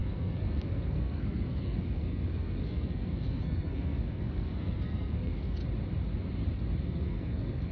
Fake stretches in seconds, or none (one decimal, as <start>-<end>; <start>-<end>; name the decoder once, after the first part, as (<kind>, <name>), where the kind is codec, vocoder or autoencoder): 0.0-5.6 (codec, SNAC); 6.8-7.7